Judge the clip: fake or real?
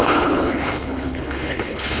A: fake